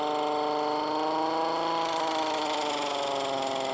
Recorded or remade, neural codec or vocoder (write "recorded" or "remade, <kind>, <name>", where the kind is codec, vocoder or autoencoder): recorded